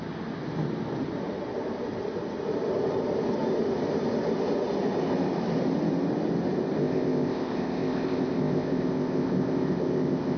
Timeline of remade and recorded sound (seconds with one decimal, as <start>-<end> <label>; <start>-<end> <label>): 0.0-6.8 recorded; 6.8-10.4 remade